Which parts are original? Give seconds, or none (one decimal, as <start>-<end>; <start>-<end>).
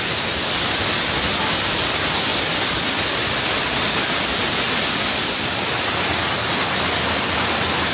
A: 0.0-7.9